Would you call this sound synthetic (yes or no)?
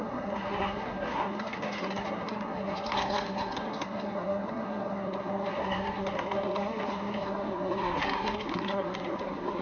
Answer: yes